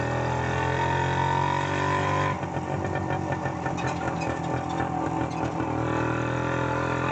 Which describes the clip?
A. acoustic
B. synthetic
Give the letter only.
A